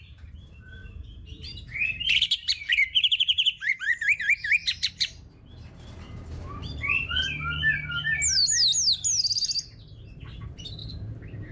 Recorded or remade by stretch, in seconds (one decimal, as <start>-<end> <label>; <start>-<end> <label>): 0.0-7.1 remade; 7.1-9.9 recorded; 9.9-11.5 remade